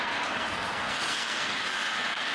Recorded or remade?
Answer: remade